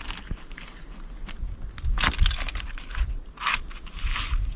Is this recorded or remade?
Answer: recorded